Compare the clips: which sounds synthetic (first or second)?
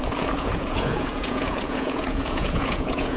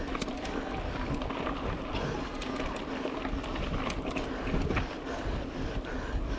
first